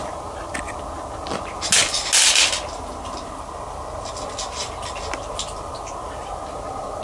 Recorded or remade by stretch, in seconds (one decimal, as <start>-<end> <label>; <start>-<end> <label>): 0.0-7.0 recorded